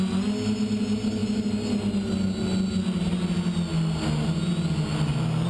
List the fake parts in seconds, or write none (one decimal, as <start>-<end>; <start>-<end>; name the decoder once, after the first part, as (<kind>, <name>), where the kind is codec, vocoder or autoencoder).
none

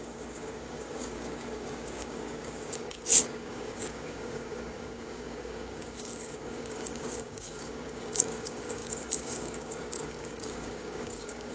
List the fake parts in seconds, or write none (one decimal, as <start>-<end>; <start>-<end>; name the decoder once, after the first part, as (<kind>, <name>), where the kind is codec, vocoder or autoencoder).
0.0-11.5 (codec, DAC)

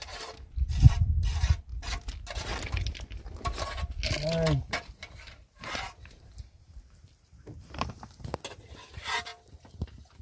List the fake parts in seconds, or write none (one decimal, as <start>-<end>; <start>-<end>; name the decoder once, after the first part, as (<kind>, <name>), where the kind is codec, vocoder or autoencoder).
0.0-1.7 (vocoder, BigVGAN v2); 4.6-8.3; 8.9-9.3

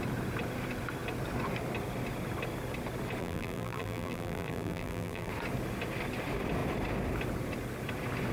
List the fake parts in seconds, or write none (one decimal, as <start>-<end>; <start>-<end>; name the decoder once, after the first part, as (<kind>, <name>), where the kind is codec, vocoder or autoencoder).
3.2-5.3 (vocoder, BigVGAN v2)

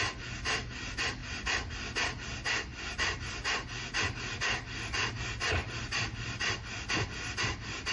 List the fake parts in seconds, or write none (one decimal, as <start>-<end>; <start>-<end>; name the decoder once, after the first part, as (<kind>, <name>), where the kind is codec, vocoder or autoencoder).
none

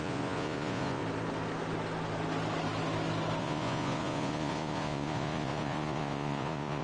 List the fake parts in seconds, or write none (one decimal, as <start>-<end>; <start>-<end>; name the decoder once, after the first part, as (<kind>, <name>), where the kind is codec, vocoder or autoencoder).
0.0-1.0 (vocoder, Vocos); 3.4-6.8

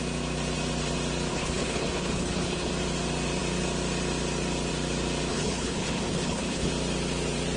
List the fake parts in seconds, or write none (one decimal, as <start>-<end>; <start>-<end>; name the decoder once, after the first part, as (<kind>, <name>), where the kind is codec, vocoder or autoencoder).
1.3-2.7 (codec, HILCodec); 5.3-6.7